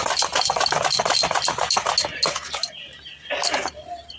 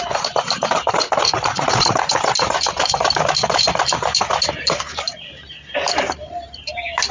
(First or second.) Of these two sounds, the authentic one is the first